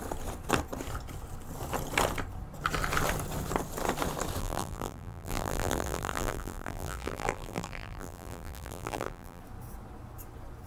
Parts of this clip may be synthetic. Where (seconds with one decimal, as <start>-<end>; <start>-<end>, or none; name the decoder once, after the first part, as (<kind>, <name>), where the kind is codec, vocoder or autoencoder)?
4.4-9.4 (vocoder, BigVGAN v2)